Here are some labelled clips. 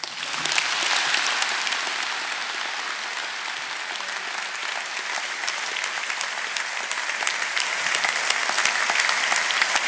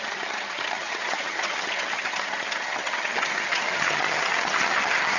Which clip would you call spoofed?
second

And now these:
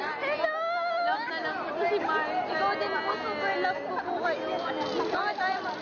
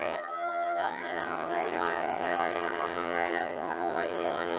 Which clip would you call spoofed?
second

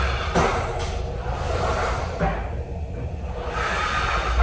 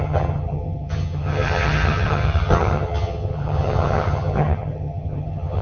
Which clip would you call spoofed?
second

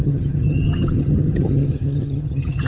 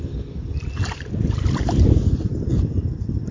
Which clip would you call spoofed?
first